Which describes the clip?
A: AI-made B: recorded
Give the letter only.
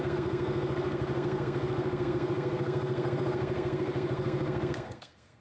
A